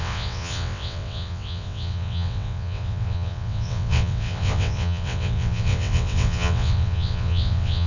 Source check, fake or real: fake